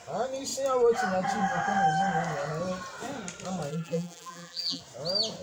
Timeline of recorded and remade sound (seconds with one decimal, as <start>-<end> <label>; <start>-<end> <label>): 0.0-3.7 recorded; 3.7-4.8 remade; 4.8-5.4 recorded